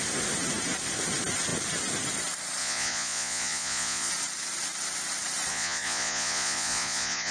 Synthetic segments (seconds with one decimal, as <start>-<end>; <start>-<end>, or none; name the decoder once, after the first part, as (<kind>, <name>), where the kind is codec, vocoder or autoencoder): 2.6-4.1 (vocoder, Vocos); 5.5-7.3

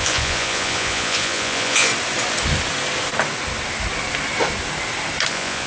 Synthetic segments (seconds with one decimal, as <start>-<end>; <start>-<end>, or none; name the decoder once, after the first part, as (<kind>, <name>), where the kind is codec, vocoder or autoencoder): 0.0-1.9 (vocoder, Vocos); 5.3-5.7

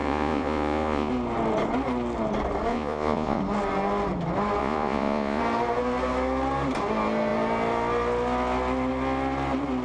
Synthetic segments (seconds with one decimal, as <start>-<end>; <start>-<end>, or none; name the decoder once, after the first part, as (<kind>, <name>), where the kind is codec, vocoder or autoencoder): 0.0-1.1 (vocoder, Vocos); 2.7-3.4; 4.6-5.4

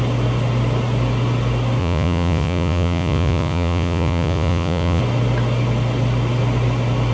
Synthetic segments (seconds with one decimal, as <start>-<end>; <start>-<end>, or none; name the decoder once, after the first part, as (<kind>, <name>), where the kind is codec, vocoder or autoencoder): 1.8-5.0 (vocoder, Vocos)